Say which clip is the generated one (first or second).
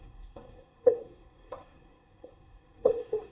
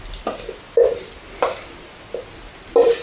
first